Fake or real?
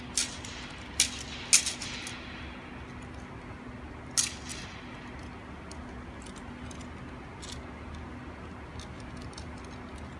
real